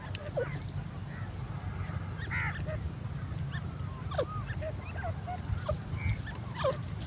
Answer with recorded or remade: recorded